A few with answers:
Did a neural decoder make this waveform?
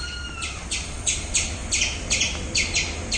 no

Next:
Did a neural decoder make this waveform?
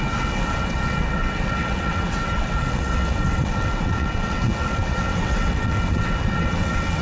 yes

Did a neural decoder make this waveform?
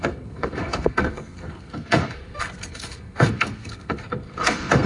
yes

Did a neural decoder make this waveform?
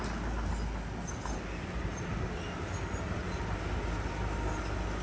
no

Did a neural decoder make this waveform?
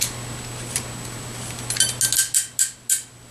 no